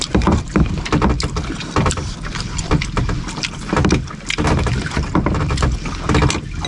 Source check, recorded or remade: recorded